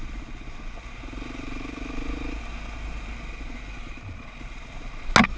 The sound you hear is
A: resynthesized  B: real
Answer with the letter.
B